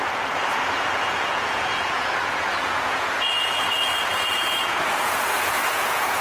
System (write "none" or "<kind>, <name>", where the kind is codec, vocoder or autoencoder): vocoder, Vocos